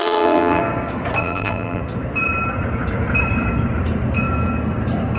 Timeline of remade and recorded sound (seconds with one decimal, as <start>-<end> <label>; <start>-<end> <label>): 0.0-0.6 remade; 0.6-1.2 recorded; 1.2-1.8 remade; 1.8-5.2 recorded